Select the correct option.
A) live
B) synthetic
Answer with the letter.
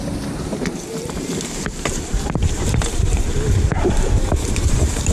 B